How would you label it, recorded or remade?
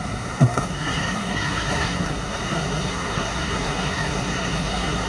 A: remade